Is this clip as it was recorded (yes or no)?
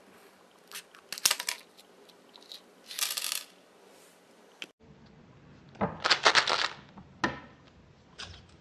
yes